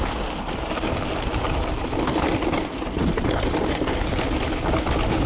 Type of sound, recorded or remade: recorded